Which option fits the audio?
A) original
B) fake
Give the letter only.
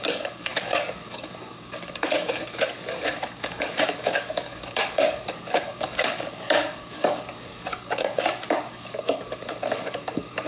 B